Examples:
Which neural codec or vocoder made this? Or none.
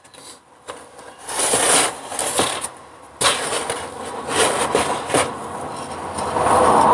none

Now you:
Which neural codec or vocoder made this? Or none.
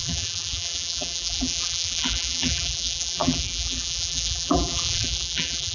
vocoder, BigVGAN v2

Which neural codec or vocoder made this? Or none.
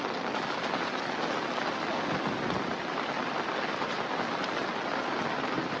none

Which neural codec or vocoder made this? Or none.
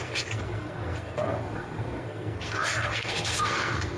codec, SNAC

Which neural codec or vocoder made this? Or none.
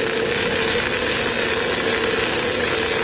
none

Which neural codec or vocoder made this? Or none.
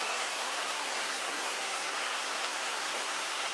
codec, SNAC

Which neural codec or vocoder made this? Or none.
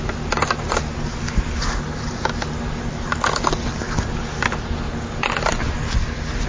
none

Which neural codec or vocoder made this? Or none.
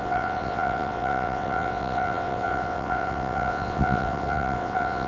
vocoder, WaveNeXt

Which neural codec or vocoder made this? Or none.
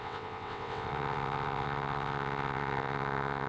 vocoder, WaveNeXt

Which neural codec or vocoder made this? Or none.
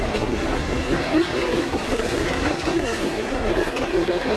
codec, SNAC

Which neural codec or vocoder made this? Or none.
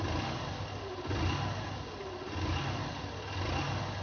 none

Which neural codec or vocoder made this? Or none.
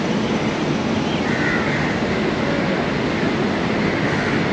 none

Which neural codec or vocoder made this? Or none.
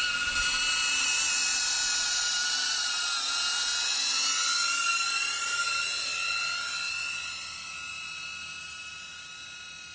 none